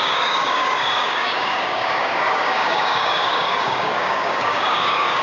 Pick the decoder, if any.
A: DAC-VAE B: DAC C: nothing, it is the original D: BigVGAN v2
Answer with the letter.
B